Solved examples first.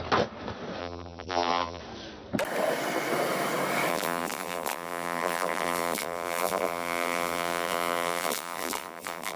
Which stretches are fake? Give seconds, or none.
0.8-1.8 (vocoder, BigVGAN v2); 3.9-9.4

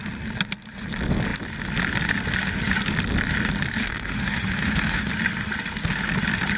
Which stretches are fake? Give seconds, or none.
3.8-5.1 (autoencoder, DAC-VAE)

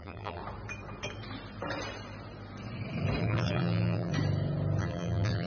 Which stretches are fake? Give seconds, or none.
0.0-0.4 (vocoder, BigVGAN v2); 3.2-4.1; 4.8-5.5

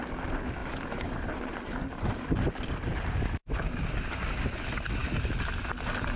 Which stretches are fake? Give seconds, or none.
0.6-4.3 (vocoder, BigVGAN v2)

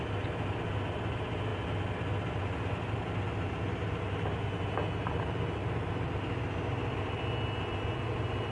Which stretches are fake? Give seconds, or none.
none